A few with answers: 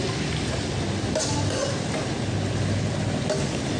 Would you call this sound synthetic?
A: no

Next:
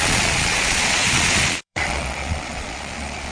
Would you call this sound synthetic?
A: yes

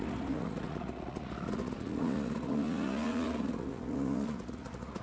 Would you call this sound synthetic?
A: yes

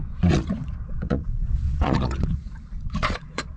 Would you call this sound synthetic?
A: yes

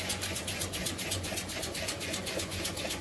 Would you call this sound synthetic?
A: yes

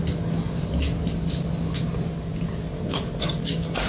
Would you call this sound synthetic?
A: no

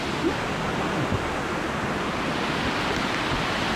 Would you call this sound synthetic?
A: no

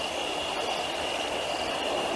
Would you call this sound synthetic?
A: no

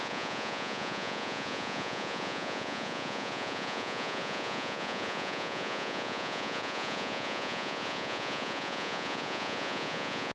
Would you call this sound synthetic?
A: yes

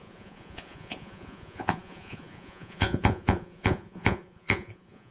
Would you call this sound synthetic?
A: yes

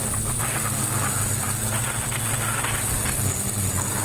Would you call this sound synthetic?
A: no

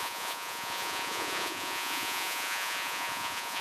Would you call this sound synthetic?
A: yes